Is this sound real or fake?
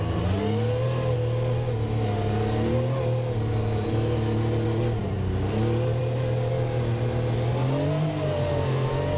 real